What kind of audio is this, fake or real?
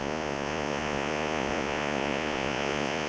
fake